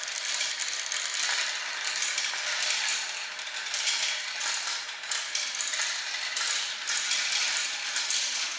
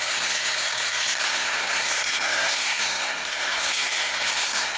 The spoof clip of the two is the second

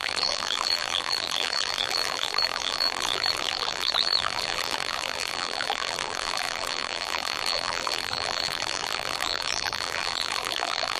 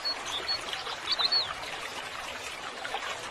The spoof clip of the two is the first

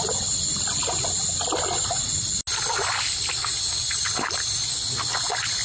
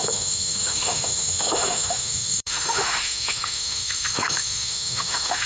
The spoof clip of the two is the second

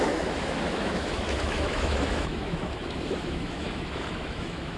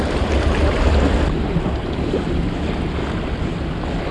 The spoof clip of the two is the first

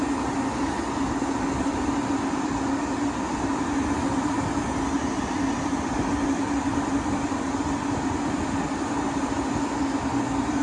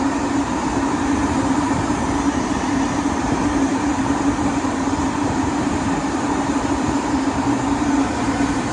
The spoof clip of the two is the second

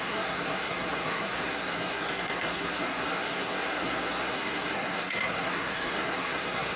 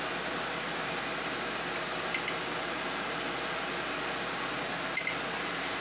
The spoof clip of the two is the first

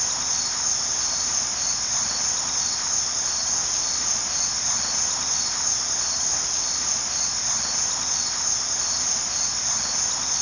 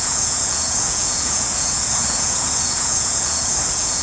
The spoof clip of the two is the second